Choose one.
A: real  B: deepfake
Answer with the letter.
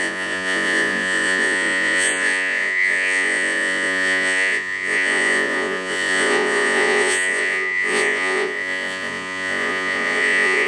B